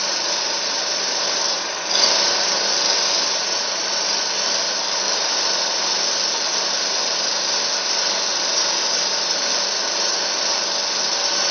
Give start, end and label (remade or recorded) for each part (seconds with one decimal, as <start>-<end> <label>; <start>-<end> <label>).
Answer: 0.0-11.5 recorded